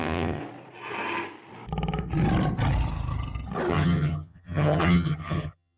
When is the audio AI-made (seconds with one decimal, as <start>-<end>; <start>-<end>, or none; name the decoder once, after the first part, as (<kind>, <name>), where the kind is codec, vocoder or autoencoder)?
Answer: 0.0-0.4 (vocoder, HiFi-GAN); 3.7-5.8